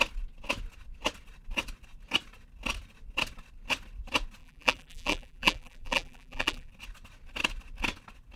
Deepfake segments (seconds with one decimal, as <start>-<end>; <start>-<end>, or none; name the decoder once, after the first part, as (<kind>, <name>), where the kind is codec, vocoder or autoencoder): 4.4-6.7 (vocoder, BigVGAN v2)